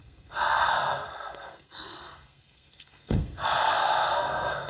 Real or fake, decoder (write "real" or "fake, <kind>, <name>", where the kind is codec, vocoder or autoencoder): fake, codec, SNAC